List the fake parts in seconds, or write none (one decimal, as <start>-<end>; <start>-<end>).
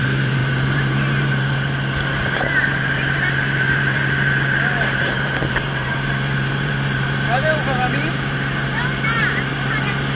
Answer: 0.0-10.2